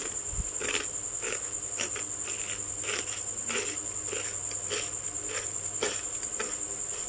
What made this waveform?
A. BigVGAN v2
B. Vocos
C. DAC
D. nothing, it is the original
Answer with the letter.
D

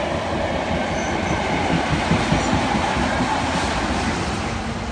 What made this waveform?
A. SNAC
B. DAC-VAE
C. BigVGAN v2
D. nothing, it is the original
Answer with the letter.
D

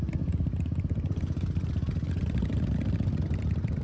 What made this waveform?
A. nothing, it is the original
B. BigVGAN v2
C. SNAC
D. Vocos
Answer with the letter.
A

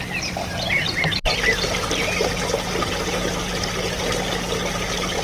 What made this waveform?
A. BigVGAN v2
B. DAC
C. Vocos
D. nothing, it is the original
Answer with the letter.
A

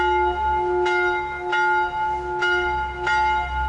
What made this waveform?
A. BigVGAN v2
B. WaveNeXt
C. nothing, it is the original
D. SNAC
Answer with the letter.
C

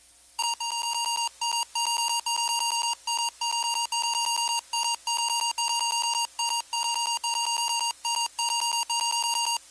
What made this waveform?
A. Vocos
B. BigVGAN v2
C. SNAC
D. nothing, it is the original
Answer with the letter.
D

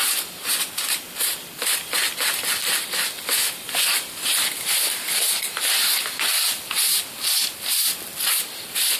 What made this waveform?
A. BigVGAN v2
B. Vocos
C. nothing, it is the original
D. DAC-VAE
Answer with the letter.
C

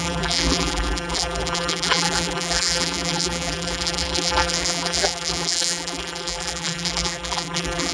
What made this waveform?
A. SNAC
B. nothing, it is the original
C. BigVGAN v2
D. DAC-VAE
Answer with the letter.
C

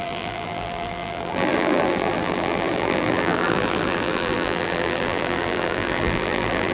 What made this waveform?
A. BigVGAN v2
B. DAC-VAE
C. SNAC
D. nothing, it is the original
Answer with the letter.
A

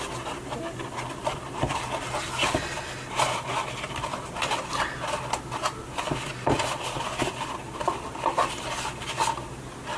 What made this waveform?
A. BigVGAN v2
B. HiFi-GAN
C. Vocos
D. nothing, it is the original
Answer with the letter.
D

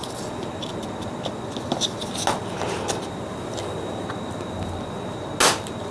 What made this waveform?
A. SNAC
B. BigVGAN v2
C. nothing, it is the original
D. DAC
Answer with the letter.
C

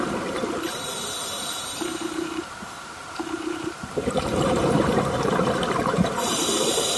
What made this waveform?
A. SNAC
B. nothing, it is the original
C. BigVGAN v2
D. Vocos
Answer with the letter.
C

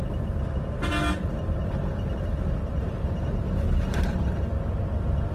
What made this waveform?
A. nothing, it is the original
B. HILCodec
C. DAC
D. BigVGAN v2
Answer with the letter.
A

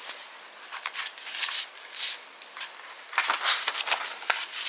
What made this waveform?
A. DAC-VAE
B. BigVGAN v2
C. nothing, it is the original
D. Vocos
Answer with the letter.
B